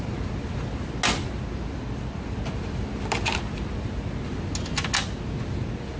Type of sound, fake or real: real